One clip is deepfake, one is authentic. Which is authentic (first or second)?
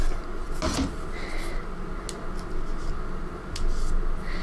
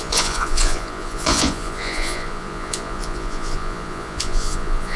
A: first